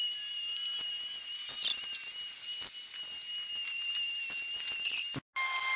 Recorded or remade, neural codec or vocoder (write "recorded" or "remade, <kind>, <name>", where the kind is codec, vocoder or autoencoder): recorded